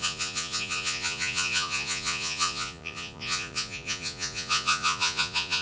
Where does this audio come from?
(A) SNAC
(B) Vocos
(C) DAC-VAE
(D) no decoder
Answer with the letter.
B